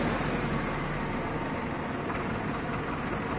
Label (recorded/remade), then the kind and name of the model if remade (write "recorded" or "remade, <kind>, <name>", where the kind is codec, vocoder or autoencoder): recorded